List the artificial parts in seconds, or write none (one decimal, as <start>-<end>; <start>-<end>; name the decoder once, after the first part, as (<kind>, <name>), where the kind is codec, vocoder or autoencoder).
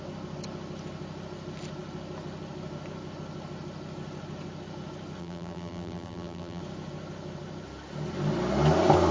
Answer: 5.2-6.6 (vocoder, BigVGAN v2)